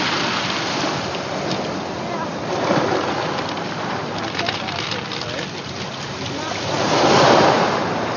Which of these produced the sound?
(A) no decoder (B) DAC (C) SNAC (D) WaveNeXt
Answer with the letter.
A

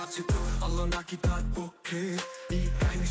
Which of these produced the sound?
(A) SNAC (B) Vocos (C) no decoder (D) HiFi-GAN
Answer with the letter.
C